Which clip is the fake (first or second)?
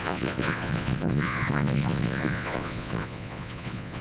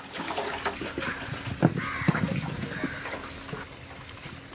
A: first